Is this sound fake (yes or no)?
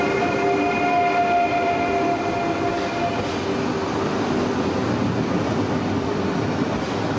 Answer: no